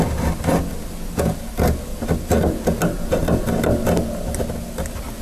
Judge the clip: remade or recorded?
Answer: recorded